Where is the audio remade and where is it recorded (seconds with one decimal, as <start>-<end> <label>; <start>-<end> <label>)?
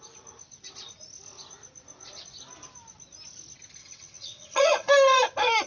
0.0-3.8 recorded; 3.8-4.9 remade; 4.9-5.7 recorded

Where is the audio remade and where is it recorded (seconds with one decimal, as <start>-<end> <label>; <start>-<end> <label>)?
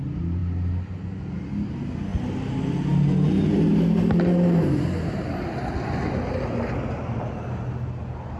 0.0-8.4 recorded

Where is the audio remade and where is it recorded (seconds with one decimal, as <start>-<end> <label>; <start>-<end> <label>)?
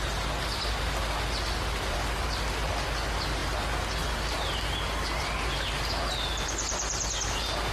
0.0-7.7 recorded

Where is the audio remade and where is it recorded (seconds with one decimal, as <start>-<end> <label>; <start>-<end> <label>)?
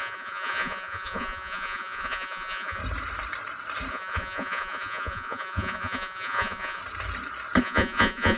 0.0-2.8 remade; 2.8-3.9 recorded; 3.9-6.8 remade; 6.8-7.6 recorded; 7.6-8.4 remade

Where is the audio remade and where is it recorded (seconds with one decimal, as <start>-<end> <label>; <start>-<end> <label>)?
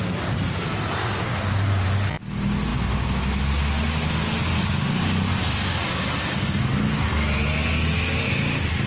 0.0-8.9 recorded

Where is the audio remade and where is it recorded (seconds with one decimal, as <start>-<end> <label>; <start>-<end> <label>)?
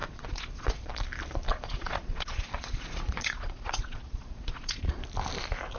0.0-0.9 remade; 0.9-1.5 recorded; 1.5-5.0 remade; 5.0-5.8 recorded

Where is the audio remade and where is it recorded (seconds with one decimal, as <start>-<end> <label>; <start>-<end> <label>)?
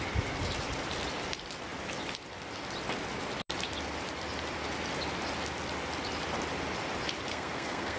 0.0-7.3 recorded; 7.3-8.0 remade